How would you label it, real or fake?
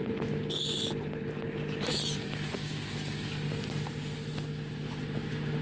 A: real